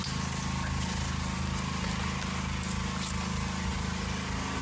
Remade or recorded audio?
recorded